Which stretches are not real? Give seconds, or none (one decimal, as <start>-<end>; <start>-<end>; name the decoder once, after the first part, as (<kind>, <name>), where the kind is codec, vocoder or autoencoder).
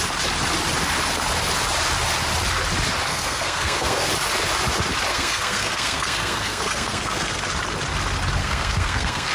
3.1-4.1 (codec, SNAC); 5.1-7.4; 8.4-9.3